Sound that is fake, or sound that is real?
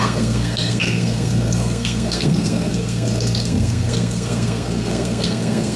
fake